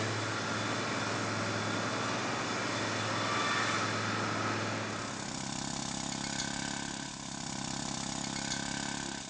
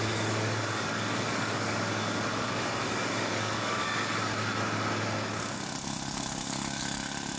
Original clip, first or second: first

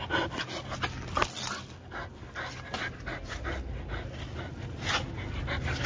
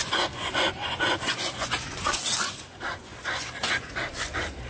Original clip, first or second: first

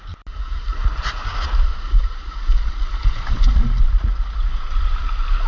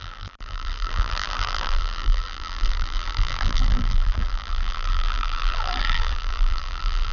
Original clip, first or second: first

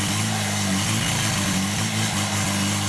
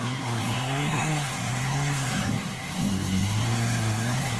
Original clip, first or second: first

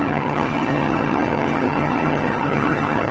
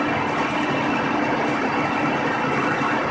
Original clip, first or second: second